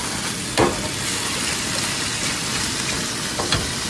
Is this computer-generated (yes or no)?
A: no